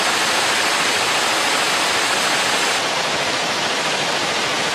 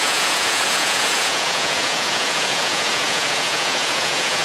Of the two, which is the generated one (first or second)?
second